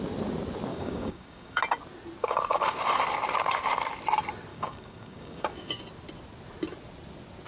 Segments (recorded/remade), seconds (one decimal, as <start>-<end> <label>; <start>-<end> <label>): 0.0-0.7 recorded; 0.7-1.6 remade; 1.6-2.2 recorded; 2.2-2.8 remade; 2.8-4.5 recorded; 4.5-5.8 remade; 5.8-7.5 recorded